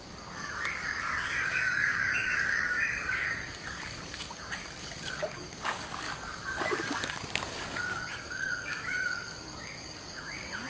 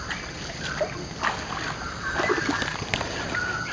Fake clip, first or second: first